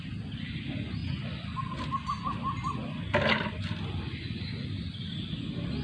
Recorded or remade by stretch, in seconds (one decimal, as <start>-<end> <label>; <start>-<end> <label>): 0.0-5.8 recorded